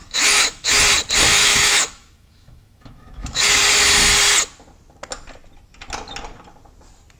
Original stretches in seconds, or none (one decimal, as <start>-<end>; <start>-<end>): 0.8-1.4; 3.6-7.2